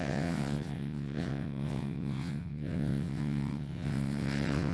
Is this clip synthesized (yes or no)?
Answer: yes